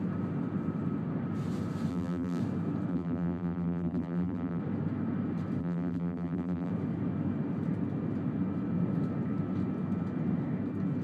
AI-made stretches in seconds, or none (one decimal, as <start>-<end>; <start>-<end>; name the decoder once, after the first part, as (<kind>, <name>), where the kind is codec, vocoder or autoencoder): 1.9-2.4 (vocoder, BigVGAN v2); 2.9-4.6; 5.6-6.7